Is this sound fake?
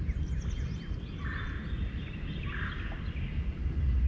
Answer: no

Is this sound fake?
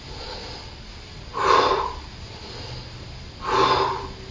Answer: yes